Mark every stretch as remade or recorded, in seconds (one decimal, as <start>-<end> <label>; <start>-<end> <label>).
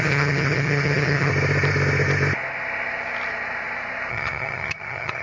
0.0-1.3 remade; 1.3-4.1 recorded; 4.1-5.2 remade